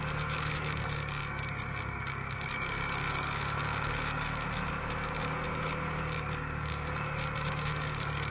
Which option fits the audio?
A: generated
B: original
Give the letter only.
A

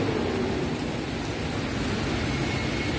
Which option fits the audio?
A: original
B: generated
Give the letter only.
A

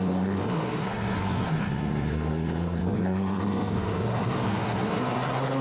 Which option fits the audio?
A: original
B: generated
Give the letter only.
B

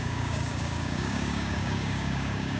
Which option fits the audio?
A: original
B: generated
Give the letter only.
B